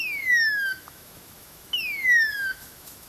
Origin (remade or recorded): remade